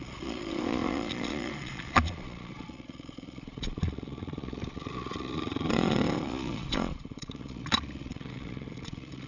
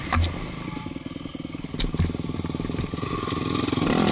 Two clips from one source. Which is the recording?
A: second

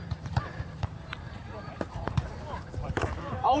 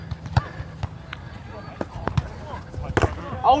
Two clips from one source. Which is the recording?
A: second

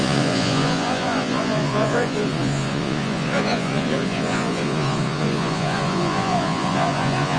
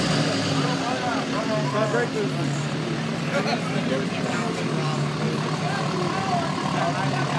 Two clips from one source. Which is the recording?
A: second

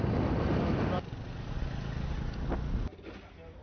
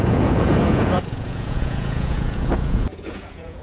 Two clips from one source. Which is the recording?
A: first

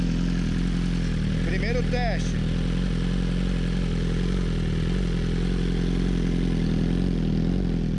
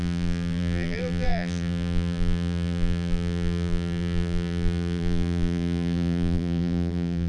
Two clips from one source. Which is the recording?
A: first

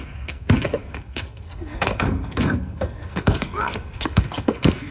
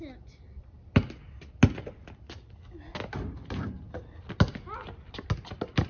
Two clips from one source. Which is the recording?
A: second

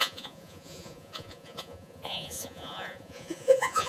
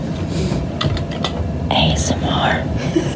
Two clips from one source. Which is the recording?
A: second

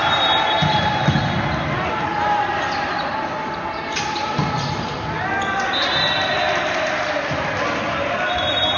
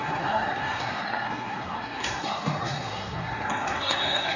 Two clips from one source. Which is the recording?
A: first